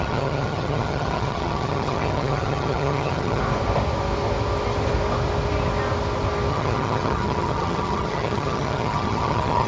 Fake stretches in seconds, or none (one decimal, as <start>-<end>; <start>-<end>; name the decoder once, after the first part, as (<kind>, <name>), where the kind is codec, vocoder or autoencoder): 0.0-3.4 (vocoder, HiFi-GAN); 6.5-9.7